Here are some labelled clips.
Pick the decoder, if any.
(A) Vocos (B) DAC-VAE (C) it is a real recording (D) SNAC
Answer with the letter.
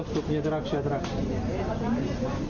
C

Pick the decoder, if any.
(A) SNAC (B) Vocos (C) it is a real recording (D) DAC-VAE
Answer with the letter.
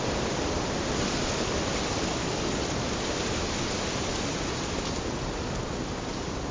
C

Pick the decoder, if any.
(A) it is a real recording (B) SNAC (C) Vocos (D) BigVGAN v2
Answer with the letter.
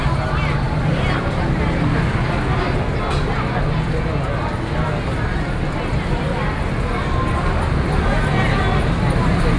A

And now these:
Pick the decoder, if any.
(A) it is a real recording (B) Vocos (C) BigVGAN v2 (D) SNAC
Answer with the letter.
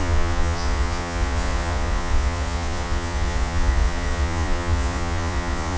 B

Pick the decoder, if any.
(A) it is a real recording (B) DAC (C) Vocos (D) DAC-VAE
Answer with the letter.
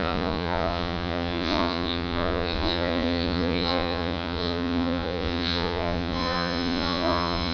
C